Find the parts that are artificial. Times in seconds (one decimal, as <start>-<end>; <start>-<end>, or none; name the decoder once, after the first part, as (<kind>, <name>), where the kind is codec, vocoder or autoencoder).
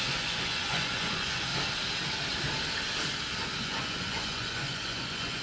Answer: 0.0-1.5 (vocoder, Vocos); 3.6-5.4